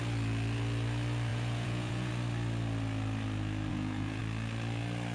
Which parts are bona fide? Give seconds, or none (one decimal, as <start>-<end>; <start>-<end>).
0.0-1.3; 2.1-3.7; 4.2-5.1